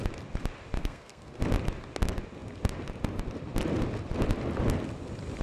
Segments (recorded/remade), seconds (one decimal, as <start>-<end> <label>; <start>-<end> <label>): 0.0-0.8 recorded; 0.8-1.4 remade; 1.4-5.4 recorded

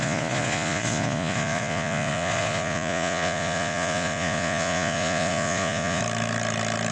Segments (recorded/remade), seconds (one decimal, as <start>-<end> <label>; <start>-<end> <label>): 0.0-6.0 remade; 6.0-6.9 recorded

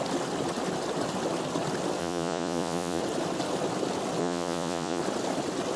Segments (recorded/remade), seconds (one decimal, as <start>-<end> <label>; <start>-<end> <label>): 0.0-2.0 recorded; 2.0-3.0 remade; 3.0-4.2 recorded; 4.2-5.0 remade; 5.0-5.8 recorded